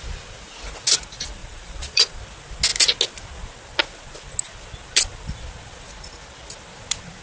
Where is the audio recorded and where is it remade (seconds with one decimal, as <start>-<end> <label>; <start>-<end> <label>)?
0.0-1.4 recorded; 1.4-2.2 remade; 2.2-7.2 recorded